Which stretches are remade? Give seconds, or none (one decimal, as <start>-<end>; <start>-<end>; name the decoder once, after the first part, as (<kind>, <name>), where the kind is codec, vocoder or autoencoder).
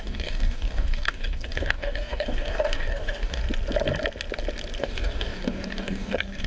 0.0-3.4 (codec, DAC); 4.8-6.5